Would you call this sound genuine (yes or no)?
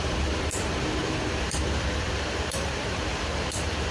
no